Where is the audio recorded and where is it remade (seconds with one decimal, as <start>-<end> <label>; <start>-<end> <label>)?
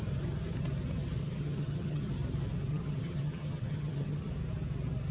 0.0-1.2 recorded; 1.2-2.1 remade; 2.1-2.7 recorded; 2.7-4.3 remade; 4.3-5.1 recorded